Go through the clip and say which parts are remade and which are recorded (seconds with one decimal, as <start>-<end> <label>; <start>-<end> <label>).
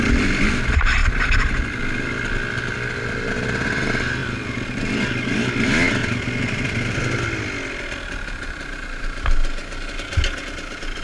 0.0-1.0 recorded; 1.0-1.8 remade; 1.8-4.2 recorded; 4.2-4.8 remade; 4.8-6.0 recorded; 6.0-7.2 remade; 7.2-11.0 recorded